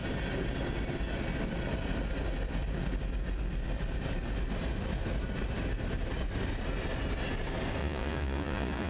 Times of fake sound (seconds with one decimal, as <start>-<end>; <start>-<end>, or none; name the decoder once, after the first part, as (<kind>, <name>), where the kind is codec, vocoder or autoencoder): 7.8-8.9 (vocoder, Vocos)